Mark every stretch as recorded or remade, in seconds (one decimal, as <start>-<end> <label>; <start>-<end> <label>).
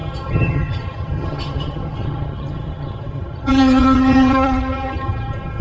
0.0-5.6 remade